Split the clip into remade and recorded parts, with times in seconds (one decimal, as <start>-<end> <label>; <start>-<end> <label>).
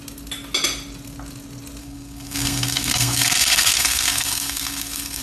0.0-1.8 recorded; 1.8-5.2 remade